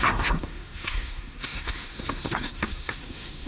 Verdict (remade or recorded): remade